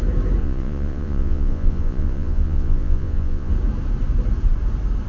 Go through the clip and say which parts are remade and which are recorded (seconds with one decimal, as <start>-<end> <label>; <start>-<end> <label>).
0.0-0.4 recorded; 0.4-3.5 remade; 3.5-5.1 recorded